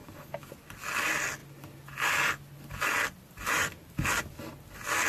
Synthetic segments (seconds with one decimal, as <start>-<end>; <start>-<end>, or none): 0.0-0.5